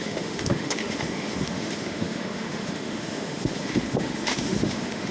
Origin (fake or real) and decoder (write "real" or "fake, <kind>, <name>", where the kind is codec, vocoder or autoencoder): fake, autoencoder, DAC-VAE